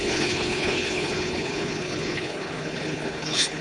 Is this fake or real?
fake